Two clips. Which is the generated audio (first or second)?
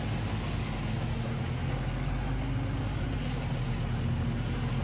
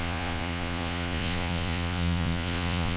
second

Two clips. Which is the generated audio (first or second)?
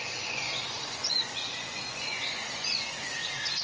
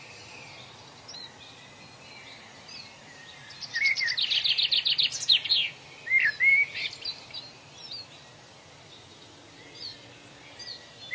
first